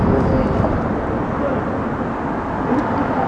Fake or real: real